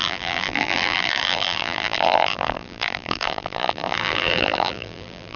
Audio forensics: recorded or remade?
remade